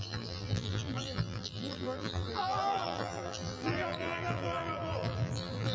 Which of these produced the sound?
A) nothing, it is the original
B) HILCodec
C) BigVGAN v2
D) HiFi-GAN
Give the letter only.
C